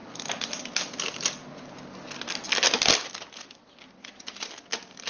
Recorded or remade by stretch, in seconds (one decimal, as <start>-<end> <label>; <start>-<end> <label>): 0.0-0.6 remade; 0.6-5.1 recorded